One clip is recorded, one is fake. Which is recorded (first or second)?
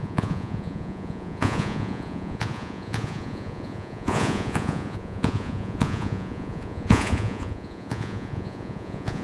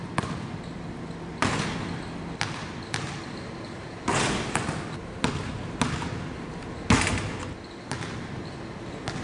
second